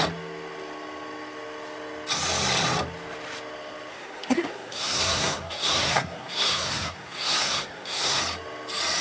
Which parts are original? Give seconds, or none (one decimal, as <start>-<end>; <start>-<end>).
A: 0.0-3.9; 8.2-9.0